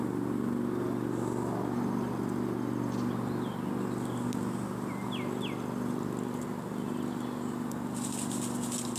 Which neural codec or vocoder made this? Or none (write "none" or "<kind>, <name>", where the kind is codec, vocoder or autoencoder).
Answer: none